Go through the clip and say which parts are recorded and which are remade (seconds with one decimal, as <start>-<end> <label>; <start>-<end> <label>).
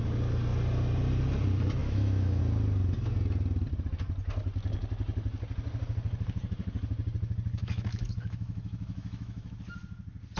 0.0-1.8 recorded; 1.8-2.4 remade; 2.4-7.6 recorded; 7.6-9.5 remade; 9.5-10.4 recorded